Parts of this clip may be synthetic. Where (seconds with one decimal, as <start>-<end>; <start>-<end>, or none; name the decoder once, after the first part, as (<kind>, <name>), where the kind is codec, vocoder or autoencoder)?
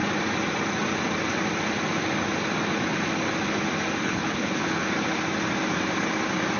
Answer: 4.0-4.8 (codec, HILCodec)